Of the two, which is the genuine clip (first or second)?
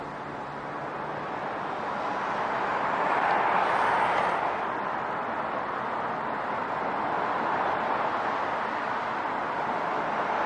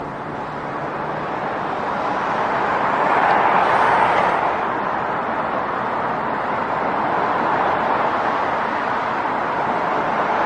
first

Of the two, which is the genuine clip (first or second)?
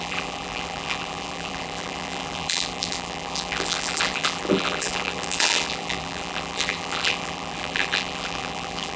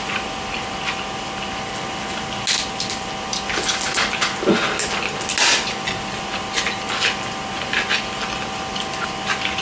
second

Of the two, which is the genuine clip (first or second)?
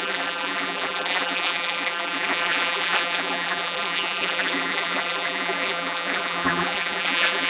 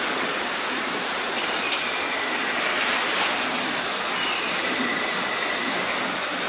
second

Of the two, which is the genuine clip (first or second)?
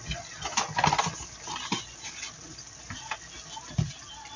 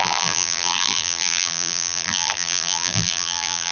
first